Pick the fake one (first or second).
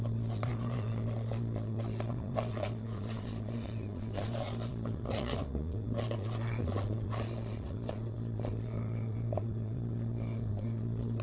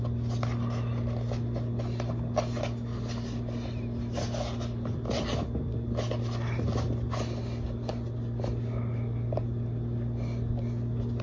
first